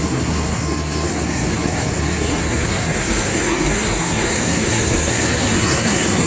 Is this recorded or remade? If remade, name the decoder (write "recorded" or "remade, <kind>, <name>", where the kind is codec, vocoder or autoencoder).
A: remade, codec, SNAC